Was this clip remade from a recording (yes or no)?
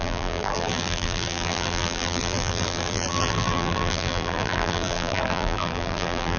yes